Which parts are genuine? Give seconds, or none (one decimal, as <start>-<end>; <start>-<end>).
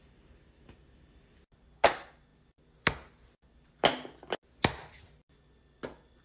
0.0-6.2